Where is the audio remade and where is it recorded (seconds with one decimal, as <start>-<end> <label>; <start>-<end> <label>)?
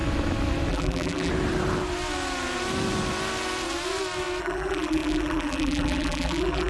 0.0-0.7 recorded; 0.7-1.3 remade; 1.3-4.4 recorded; 4.4-6.7 remade